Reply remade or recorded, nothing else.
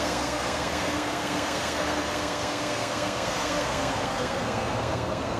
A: remade